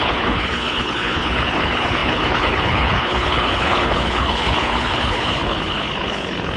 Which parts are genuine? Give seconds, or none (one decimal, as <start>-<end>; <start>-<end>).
none